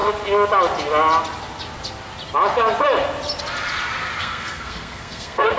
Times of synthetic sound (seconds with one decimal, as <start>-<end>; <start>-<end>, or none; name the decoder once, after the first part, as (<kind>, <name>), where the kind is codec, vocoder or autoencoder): 4.2-5.6 (codec, SNAC)